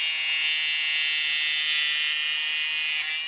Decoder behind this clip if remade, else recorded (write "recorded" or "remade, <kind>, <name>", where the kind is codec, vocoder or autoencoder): recorded